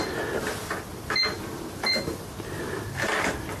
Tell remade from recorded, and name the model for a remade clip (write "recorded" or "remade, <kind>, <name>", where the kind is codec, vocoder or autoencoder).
recorded